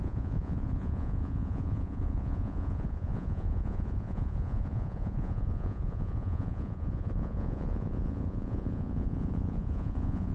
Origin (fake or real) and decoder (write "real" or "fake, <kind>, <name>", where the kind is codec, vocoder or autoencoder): fake, vocoder, Vocos